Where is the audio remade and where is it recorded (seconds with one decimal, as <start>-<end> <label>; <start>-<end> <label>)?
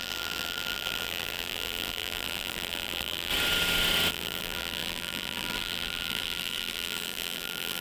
0.0-3.3 remade; 3.3-4.1 recorded; 4.1-7.8 remade